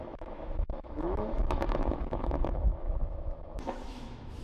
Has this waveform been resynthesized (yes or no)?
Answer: yes